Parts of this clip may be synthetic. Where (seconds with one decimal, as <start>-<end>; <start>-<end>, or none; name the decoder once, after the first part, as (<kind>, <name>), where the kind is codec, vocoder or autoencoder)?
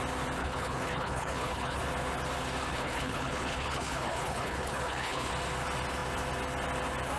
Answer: 0.4-1.8 (codec, HILCodec); 2.7-5.3